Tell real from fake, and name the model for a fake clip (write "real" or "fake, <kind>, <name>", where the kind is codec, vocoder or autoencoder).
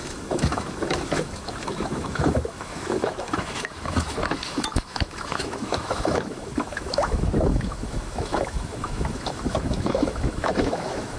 fake, autoencoder, DAC-VAE